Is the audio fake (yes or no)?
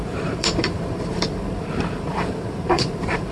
yes